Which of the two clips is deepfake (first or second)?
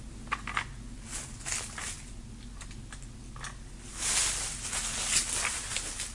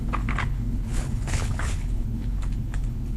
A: second